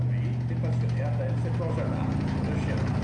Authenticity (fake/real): real